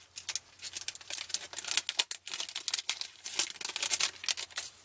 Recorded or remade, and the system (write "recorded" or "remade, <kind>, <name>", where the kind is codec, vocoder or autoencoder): recorded